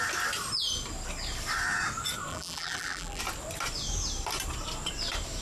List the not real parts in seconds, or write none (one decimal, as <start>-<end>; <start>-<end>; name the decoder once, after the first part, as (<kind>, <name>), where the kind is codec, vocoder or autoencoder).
2.3-3.2 (vocoder, BigVGAN v2)

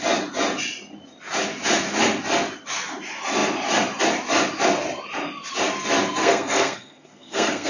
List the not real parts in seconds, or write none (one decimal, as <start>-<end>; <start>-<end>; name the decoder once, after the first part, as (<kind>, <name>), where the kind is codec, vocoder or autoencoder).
6.2-7.7 (codec, SNAC)

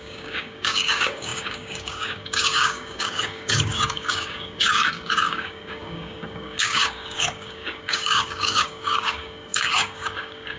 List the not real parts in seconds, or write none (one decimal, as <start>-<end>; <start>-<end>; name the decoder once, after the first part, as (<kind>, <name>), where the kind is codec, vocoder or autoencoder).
0.0-10.6 (codec, DAC)

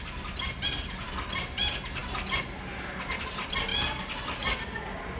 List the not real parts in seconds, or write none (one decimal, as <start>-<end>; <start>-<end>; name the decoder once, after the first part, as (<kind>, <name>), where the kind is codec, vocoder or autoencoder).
none

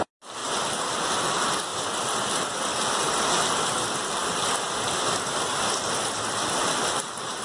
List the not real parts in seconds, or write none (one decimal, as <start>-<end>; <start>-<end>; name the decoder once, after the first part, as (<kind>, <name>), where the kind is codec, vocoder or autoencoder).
none

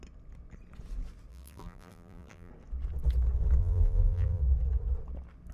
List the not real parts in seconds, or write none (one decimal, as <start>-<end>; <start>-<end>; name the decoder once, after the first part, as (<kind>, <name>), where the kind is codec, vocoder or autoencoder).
1.3-2.5 (vocoder, BigVGAN v2); 3.6-4.4

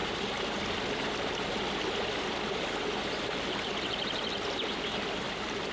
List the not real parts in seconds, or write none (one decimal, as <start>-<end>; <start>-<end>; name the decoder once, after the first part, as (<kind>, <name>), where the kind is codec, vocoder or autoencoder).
none

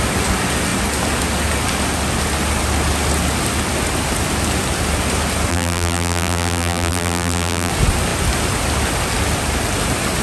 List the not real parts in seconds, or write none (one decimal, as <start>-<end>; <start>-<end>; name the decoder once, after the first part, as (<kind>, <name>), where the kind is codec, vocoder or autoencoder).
5.5-7.7 (vocoder, BigVGAN v2)